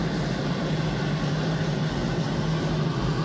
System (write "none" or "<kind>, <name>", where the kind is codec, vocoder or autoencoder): none